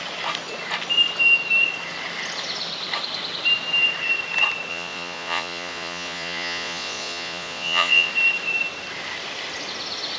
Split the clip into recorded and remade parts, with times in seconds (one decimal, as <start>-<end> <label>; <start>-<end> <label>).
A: 0.0-4.7 recorded; 4.7-8.1 remade; 8.1-10.2 recorded